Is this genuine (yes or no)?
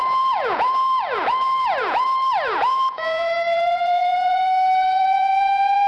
no